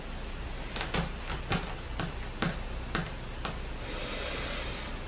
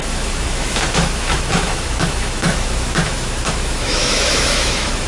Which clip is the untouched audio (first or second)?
first